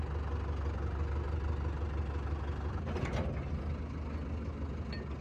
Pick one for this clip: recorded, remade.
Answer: recorded